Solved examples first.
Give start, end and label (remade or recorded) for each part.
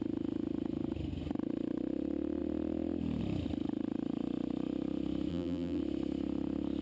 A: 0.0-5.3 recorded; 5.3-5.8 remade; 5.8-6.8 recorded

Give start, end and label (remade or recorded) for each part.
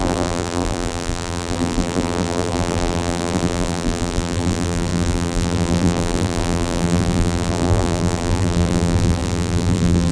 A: 0.0-10.1 remade